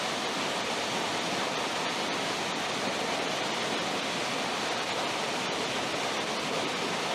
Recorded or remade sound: recorded